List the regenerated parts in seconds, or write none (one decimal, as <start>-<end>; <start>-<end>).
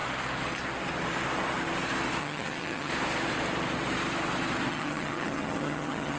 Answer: 2.2-2.9; 4.7-6.2